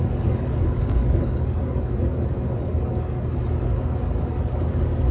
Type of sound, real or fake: fake